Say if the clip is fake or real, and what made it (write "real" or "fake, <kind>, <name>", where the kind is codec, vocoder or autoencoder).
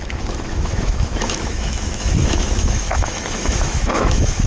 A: fake, autoencoder, DAC-VAE